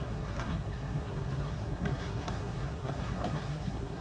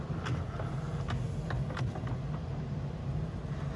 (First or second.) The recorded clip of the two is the second